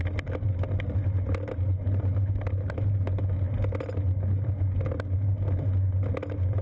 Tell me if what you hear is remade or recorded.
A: recorded